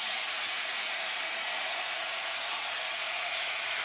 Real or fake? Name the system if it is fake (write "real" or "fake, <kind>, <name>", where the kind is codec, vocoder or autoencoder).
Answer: fake, vocoder, Vocos